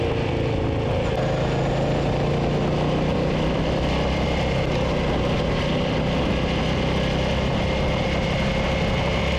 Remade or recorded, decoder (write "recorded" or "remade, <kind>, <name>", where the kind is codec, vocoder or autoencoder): recorded